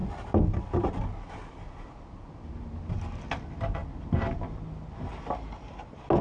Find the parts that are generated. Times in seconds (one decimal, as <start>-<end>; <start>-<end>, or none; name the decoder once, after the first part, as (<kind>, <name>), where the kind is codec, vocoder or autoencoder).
none